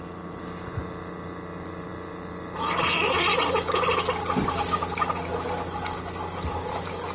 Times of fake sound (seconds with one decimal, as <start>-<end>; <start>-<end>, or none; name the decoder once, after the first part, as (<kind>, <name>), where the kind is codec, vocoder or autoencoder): none